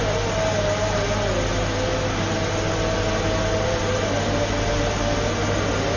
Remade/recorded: recorded